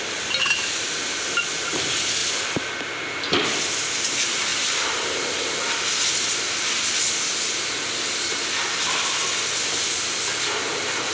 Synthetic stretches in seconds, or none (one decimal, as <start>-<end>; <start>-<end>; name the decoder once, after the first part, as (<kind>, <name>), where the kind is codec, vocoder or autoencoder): none